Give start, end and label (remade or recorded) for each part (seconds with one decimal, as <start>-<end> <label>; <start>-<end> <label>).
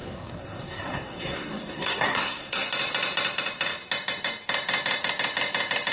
0.0-2.7 remade; 2.7-5.9 recorded